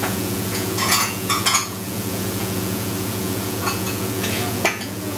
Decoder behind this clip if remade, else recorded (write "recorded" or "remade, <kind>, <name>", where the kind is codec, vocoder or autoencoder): remade, vocoder, Vocos